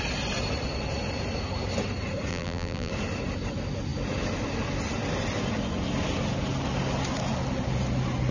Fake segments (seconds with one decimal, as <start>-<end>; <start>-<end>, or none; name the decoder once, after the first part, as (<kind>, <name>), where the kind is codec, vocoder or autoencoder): 2.3-2.9 (vocoder, BigVGAN v2)